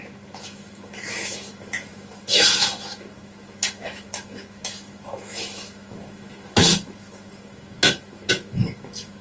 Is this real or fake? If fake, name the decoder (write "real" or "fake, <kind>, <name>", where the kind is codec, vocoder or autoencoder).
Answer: fake, autoencoder, DAC-VAE